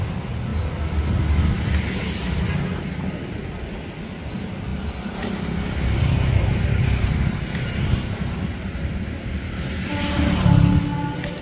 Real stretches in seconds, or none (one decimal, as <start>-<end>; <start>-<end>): 0.0-11.4